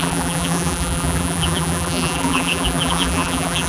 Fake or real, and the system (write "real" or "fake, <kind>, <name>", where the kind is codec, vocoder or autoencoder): fake, vocoder, BigVGAN v2